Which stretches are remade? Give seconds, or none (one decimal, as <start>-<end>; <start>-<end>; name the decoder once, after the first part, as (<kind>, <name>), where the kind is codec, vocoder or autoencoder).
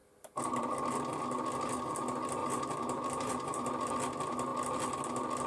0.0-0.7 (vocoder, BigVGAN v2); 2.4-3.9